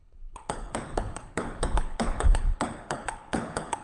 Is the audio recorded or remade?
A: remade